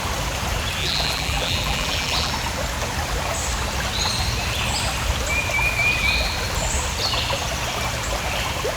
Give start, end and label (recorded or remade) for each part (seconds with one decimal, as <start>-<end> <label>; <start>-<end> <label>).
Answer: 0.0-0.8 recorded; 0.8-2.3 remade; 2.3-8.8 recorded